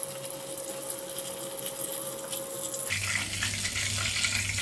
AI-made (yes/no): no